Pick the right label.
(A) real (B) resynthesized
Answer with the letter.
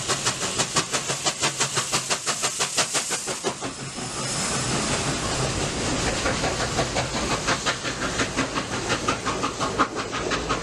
A